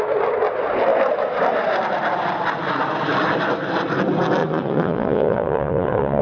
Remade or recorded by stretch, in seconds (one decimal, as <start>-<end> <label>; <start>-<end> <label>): 0.0-4.4 recorded; 4.4-6.2 remade